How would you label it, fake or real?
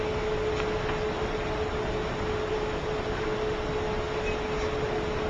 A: real